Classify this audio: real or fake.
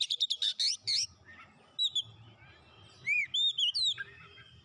real